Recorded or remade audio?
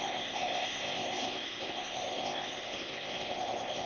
remade